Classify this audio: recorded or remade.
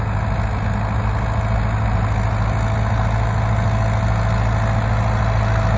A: recorded